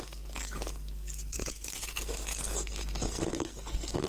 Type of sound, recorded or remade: remade